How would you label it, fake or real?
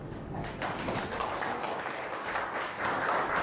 fake